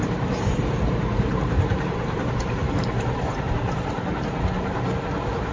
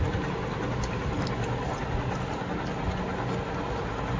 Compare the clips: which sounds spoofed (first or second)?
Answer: first